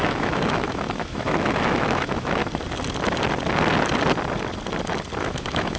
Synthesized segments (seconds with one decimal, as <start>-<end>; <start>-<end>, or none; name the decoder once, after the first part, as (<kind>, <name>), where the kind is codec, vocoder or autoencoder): 0.0-2.4 (autoencoder, DAC-VAE); 5.2-5.8